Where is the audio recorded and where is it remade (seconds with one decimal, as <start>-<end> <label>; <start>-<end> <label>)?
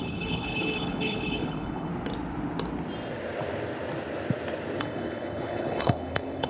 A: 0.0-1.9 remade; 1.9-4.8 recorded; 4.8-6.5 remade